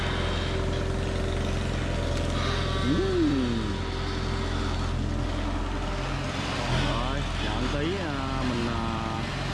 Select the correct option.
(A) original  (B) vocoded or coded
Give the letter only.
A